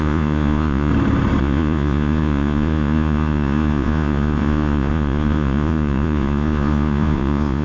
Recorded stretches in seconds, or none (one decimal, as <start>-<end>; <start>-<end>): 0.9-1.4